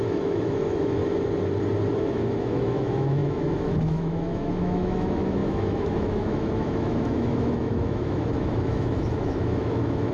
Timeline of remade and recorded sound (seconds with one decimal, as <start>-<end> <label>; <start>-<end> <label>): 0.0-1.0 remade; 1.0-2.0 recorded; 2.0-10.1 remade